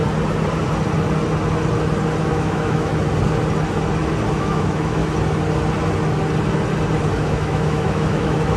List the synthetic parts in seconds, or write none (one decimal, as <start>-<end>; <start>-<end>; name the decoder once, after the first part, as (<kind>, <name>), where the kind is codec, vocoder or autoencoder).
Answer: 2.2-2.9 (autoencoder, DAC-VAE); 4.3-5.0; 7.2-8.6